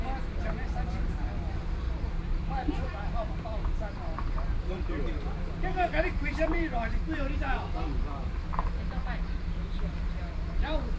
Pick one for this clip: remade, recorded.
remade